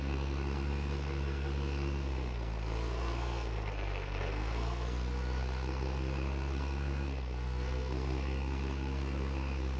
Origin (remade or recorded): remade